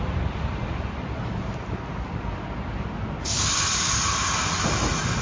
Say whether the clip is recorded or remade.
recorded